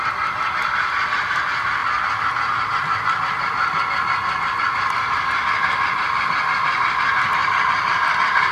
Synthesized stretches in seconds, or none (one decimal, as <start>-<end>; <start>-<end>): none